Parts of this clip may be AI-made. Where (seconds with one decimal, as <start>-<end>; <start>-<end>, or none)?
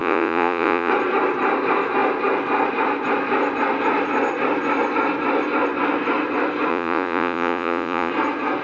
0.0-0.9; 6.7-8.1